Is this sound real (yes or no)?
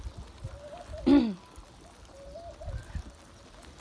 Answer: yes